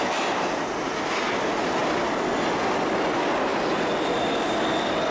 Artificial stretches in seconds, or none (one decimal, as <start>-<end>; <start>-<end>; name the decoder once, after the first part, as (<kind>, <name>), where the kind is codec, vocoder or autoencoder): 1.8-2.3 (vocoder, BigVGAN v2); 3.5-4.2